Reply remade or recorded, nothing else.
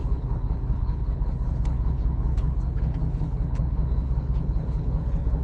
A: remade